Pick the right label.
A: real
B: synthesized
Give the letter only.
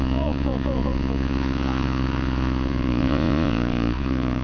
B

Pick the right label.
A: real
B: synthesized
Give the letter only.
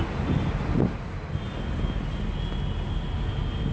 A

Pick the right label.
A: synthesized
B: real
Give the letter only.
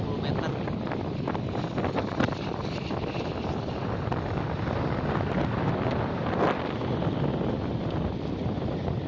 B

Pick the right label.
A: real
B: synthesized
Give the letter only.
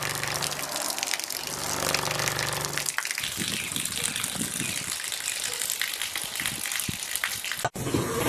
A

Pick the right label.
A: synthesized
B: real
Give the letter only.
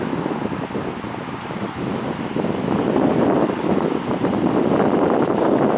B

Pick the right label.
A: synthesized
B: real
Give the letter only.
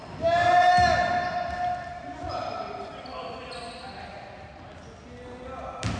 B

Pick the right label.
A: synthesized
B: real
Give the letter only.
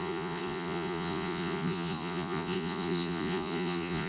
A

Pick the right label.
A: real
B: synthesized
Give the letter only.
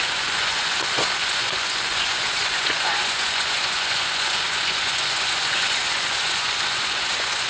B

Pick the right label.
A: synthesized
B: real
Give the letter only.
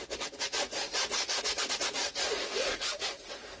A